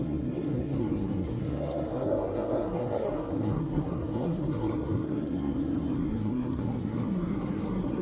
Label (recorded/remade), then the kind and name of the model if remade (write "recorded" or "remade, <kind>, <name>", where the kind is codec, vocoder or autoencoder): remade, codec, SNAC